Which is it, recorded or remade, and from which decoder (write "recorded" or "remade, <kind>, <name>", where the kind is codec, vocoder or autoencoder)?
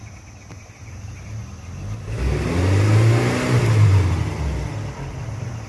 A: recorded